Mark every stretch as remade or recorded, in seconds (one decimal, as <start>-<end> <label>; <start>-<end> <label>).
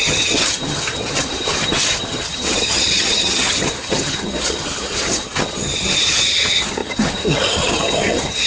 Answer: 0.0-8.5 remade